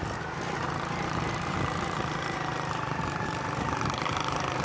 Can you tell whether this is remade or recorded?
remade